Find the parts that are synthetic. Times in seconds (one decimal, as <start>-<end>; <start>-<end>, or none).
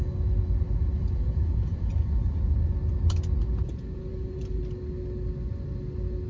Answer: 1.0-1.9; 3.4-4.6